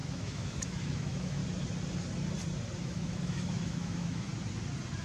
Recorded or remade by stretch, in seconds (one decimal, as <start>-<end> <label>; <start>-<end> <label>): 0.0-1.4 remade; 1.4-2.8 recorded; 2.8-4.3 remade; 4.3-5.0 recorded